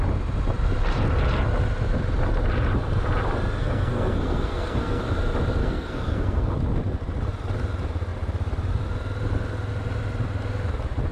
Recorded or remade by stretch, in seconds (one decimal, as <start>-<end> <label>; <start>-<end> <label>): 0.0-3.6 recorded; 3.6-5.0 remade; 5.0-5.6 recorded; 5.6-6.5 remade; 6.5-11.1 recorded